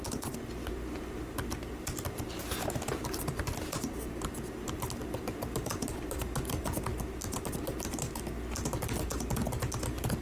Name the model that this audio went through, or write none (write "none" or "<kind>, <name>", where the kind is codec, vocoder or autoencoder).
none